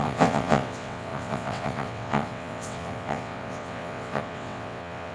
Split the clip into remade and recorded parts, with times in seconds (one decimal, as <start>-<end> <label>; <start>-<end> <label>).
0.0-5.1 remade